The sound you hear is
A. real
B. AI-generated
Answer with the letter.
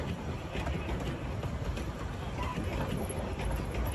A